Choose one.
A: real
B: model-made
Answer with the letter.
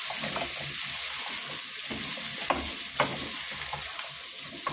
A